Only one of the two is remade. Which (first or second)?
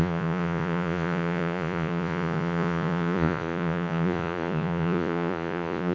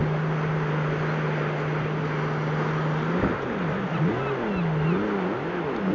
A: first